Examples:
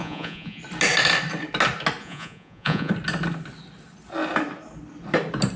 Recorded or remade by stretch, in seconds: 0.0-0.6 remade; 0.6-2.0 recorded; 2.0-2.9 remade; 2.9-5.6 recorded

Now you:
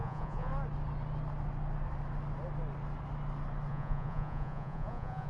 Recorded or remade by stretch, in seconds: 0.0-0.5 remade; 0.5-3.7 recorded; 3.7-5.3 remade

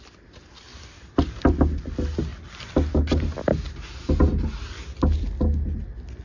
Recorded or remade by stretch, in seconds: 0.0-6.2 recorded